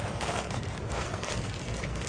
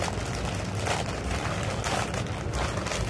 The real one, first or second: second